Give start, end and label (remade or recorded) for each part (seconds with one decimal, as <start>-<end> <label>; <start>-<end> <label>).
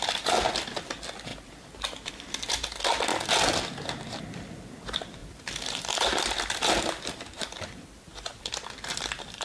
0.0-1.3 remade; 1.3-2.1 recorded; 2.1-3.1 remade; 3.1-4.2 recorded; 4.2-9.4 remade